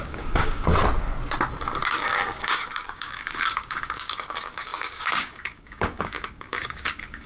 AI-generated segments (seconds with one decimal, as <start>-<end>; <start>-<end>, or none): 0.0-0.7; 2.0-7.3